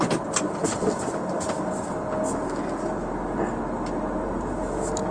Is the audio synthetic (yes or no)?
no